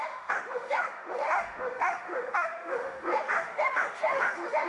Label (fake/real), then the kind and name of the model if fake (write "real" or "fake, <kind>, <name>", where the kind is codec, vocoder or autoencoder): fake, autoencoder, DAC-VAE